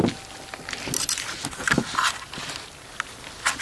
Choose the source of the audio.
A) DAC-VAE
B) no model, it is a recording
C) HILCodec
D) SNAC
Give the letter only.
B